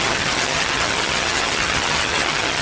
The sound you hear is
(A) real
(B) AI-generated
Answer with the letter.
B